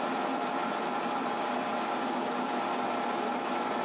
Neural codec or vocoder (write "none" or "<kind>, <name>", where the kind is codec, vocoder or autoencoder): none